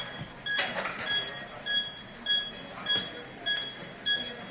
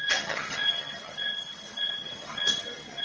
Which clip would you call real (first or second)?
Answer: first